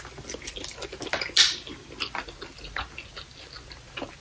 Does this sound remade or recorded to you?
recorded